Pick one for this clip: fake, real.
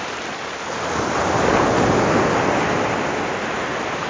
real